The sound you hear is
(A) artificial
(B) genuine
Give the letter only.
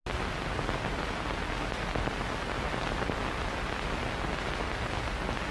B